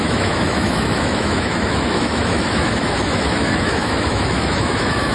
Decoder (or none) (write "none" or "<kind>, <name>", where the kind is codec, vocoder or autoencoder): autoencoder, DAC-VAE